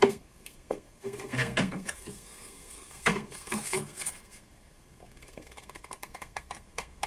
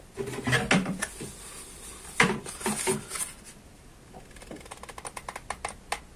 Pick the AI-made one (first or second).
first